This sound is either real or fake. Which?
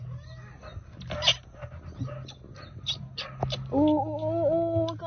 real